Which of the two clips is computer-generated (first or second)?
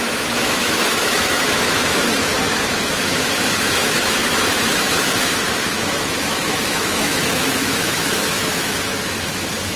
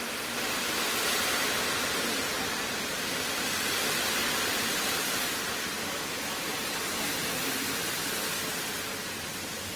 first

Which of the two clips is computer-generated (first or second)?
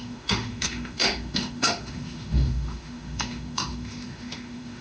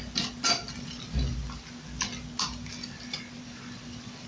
first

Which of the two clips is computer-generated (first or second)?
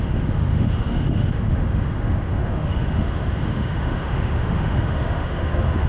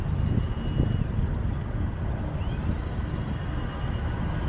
first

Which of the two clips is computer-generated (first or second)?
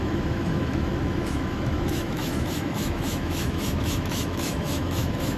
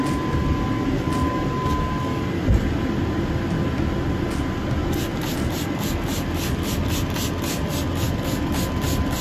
first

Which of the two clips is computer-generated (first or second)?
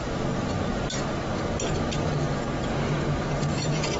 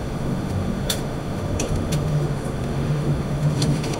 second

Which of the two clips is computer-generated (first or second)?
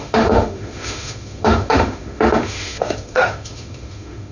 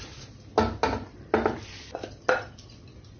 first